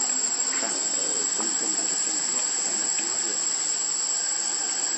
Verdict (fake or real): real